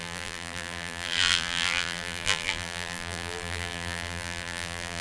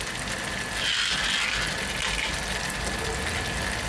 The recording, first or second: second